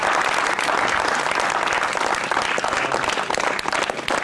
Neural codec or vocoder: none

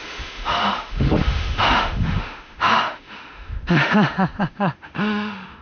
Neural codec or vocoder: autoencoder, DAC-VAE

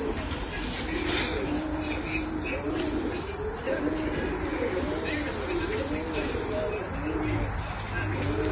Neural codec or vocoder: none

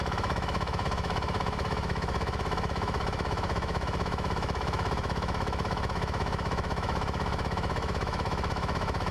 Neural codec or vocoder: autoencoder, DAC-VAE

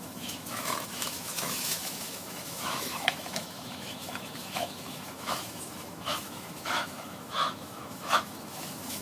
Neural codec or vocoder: autoencoder, DAC-VAE